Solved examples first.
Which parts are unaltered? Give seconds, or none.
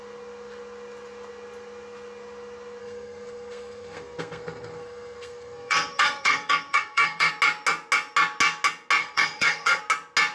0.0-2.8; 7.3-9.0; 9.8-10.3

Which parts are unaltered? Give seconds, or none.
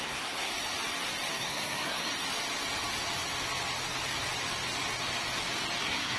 0.5-1.3; 2.1-5.8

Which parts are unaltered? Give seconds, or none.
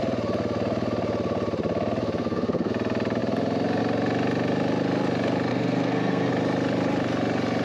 0.0-2.2; 2.7-5.5; 6.3-7.6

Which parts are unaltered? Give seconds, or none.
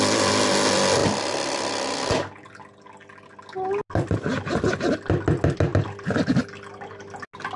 0.0-7.6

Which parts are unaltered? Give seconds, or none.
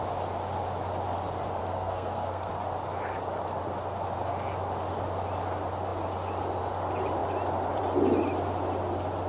0.0-1.6; 2.5-9.3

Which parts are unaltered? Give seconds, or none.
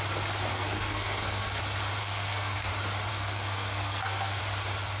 0.0-0.5; 1.6-2.0; 2.7-3.1; 4.4-5.0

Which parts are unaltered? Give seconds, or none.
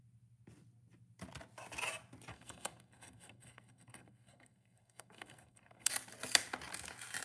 0.0-2.3; 5.9-7.2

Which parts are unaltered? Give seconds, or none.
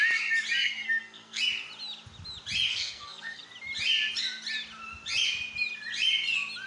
0.0-0.6; 1.4-2.7; 3.4-6.7